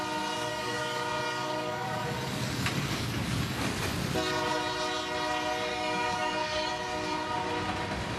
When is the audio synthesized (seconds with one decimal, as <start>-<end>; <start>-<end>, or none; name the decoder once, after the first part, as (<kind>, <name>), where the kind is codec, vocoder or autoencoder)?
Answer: 0.5-3.8 (codec, DAC); 5.7-6.7